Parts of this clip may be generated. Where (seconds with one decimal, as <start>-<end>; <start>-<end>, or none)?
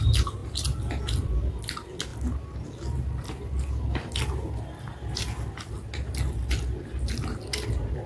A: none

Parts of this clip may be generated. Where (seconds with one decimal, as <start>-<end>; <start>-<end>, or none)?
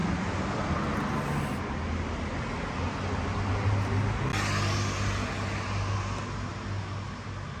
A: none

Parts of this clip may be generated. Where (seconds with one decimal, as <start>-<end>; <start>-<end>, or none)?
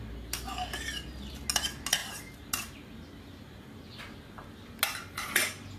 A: none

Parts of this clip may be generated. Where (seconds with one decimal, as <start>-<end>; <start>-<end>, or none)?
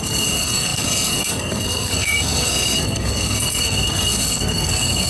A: 0.0-5.1